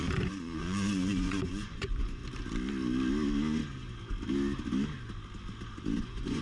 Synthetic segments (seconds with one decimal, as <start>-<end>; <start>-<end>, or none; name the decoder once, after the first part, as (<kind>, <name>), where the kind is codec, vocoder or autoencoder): 0.0-2.2 (vocoder, Vocos); 6.0-6.4